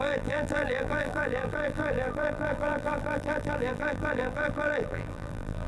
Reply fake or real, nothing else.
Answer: fake